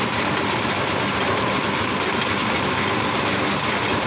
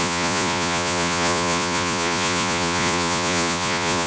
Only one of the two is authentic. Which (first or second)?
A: first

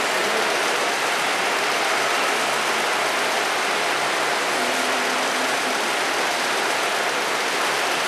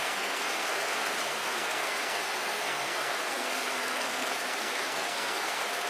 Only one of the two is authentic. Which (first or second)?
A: first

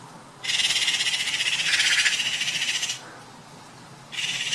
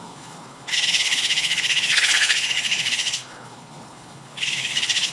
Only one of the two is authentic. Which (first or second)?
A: first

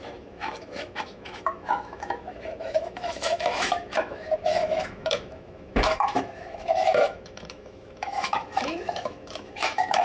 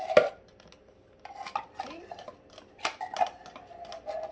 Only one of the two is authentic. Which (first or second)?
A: second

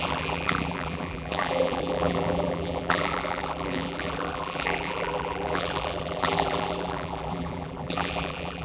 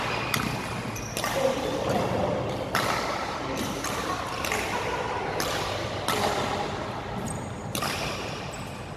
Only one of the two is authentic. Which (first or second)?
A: second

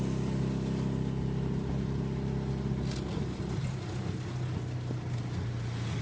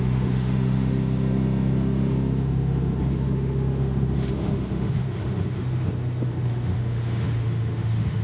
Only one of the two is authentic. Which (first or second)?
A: first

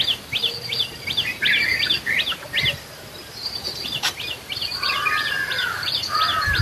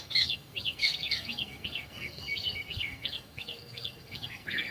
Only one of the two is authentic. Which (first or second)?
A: first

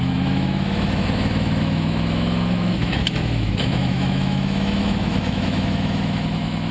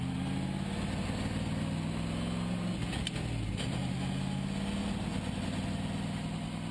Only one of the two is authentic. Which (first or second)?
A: second